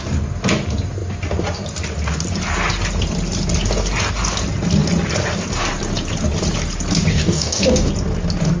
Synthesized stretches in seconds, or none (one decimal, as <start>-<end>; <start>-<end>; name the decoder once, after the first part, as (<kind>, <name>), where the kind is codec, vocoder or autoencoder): 7.1-7.9 (codec, DAC)